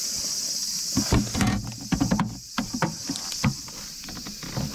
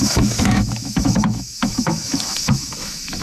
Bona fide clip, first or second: first